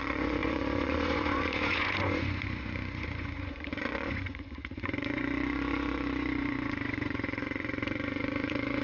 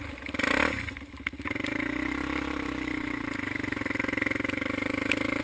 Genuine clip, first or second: second